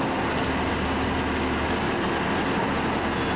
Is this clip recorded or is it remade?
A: recorded